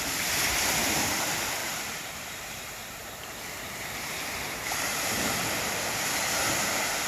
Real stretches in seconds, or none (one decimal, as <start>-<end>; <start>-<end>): 0.0-1.6; 2.6-3.0; 5.4-7.1